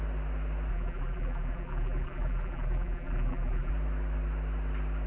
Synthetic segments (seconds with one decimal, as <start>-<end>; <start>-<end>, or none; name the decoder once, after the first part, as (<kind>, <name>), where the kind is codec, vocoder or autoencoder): 0.7-3.7 (vocoder, BigVGAN v2)